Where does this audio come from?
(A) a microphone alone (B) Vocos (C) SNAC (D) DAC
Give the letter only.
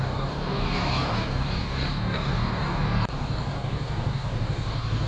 D